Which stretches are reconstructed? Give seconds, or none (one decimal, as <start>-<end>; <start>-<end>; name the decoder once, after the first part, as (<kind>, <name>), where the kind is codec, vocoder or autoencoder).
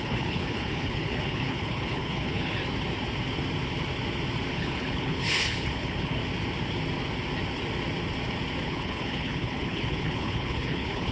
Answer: 0.0-2.6 (codec, HILCodec); 4.5-6.2; 8.6-11.1